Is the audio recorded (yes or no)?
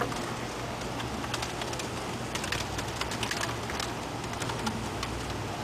yes